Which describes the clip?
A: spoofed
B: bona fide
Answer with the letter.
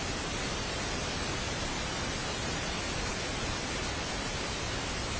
B